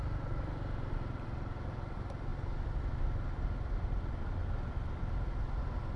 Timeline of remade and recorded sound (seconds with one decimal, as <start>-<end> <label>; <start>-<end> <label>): 0.0-2.3 remade; 2.3-4.0 recorded; 4.0-6.0 remade